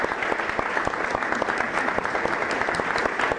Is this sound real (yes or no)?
yes